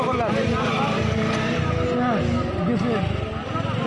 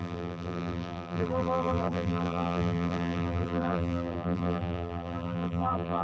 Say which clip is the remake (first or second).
second